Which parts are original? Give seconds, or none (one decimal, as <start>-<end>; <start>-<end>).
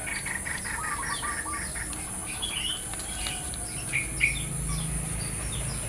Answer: 0.0-5.9